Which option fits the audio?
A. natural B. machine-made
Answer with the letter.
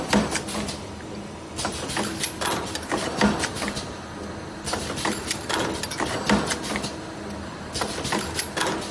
A